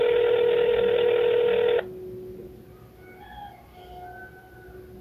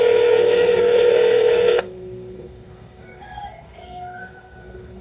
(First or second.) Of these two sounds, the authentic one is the first